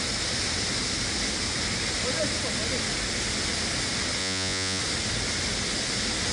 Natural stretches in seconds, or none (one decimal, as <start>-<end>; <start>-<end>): 0.0-4.2; 4.8-6.3